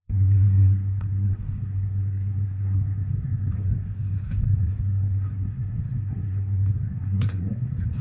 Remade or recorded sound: remade